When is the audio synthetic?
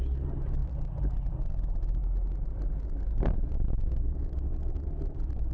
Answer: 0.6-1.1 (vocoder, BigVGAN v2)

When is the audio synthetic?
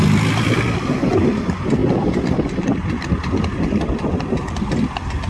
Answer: none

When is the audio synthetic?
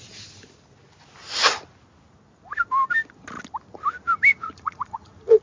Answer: 4.3-5.4 (vocoder, Vocos)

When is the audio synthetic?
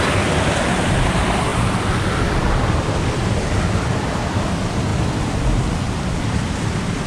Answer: none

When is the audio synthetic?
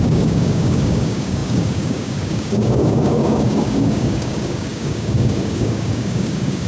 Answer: 0.0-6.7 (codec, DAC)